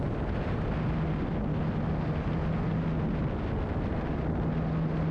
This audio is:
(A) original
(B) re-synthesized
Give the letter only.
A